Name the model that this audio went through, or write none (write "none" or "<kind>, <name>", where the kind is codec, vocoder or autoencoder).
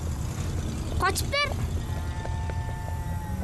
none